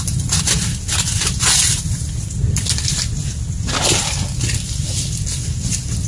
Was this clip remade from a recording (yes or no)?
no